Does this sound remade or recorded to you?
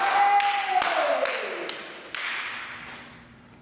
recorded